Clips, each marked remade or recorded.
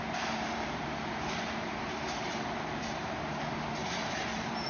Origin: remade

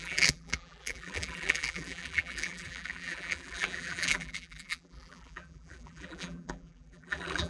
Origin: remade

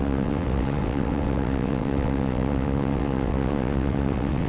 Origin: remade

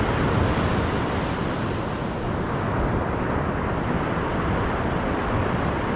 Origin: recorded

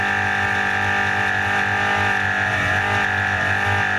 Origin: recorded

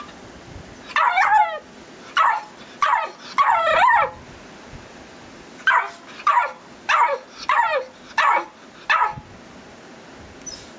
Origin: recorded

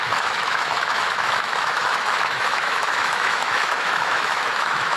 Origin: remade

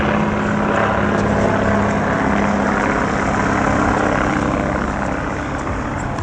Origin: recorded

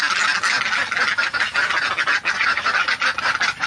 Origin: recorded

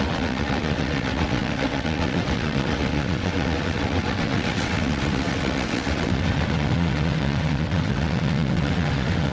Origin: remade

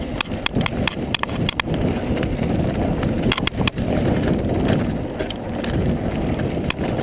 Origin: remade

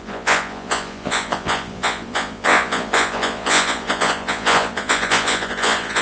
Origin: remade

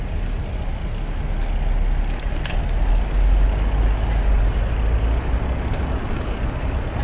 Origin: recorded